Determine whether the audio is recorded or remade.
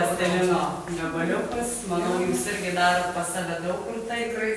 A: recorded